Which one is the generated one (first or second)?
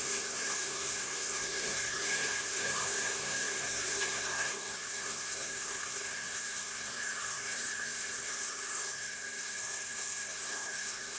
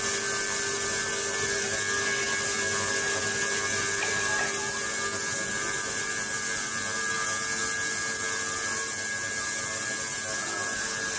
first